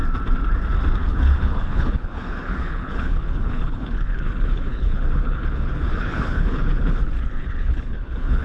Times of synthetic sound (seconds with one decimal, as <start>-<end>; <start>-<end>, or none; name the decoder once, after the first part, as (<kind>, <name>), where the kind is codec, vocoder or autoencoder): 1.0-8.4 (codec, HILCodec)